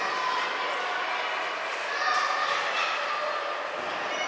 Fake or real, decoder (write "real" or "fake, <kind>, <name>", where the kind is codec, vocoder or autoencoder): real